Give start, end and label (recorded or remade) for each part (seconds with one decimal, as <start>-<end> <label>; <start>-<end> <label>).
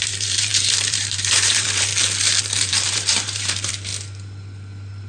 0.0-1.9 remade; 1.9-2.4 recorded; 2.4-3.9 remade; 3.9-5.1 recorded